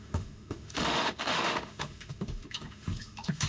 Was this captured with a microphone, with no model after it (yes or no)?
no